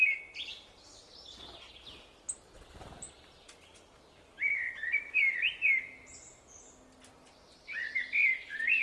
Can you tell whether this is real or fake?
real